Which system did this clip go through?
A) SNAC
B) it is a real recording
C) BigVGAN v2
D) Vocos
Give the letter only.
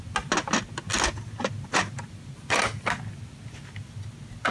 B